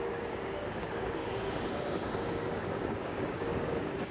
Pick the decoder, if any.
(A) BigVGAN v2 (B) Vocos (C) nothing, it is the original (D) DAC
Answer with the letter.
D